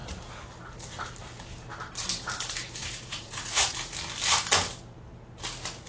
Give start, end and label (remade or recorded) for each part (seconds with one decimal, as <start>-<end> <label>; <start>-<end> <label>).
0.0-2.8 recorded; 2.8-3.7 remade; 3.7-5.9 recorded